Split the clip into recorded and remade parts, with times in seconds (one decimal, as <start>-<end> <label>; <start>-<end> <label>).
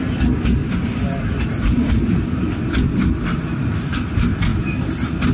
0.0-5.3 recorded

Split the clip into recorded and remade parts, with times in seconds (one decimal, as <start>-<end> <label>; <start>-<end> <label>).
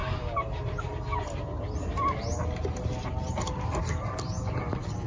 0.0-5.1 recorded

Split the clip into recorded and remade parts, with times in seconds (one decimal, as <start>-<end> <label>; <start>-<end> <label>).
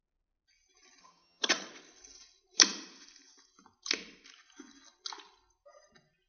0.0-1.0 recorded; 1.0-1.7 remade; 1.7-6.3 recorded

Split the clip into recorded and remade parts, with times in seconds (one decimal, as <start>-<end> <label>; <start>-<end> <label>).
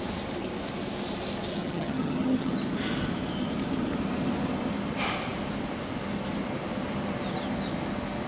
0.0-1.5 recorded; 1.5-2.5 remade; 2.5-8.3 recorded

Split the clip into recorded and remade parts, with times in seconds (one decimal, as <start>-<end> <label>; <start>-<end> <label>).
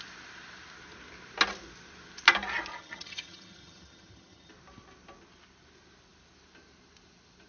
0.0-2.7 recorded; 2.7-4.5 remade; 4.5-7.5 recorded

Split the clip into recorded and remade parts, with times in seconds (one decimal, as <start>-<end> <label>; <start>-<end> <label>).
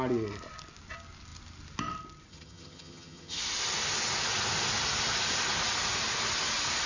0.0-2.3 recorded; 2.3-3.4 remade; 3.4-6.9 recorded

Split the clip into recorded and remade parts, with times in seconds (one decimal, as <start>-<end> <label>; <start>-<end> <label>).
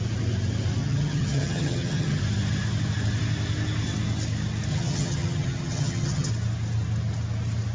0.0-0.8 recorded; 0.8-2.2 remade; 2.2-4.7 recorded; 4.7-6.3 remade; 6.3-7.7 recorded